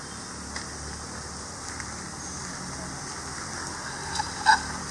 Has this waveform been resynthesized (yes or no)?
no